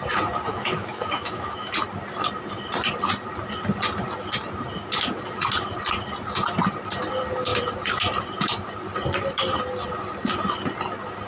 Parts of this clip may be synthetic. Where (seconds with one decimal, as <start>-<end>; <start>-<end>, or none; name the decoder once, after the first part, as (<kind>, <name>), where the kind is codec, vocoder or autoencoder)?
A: 0.5-1.7 (autoencoder, DAC-VAE)